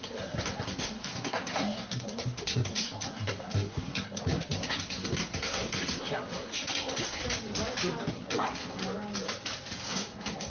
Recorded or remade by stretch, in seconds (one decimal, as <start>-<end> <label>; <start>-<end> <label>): 0.0-7.2 remade; 7.2-8.1 recorded; 8.1-8.8 remade; 8.8-9.9 recorded; 9.9-10.5 remade